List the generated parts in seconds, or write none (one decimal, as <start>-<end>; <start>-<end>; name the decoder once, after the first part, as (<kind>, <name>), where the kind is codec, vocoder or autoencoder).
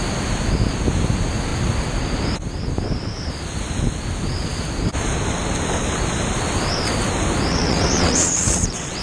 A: 7.5-9.0 (vocoder, WaveNeXt)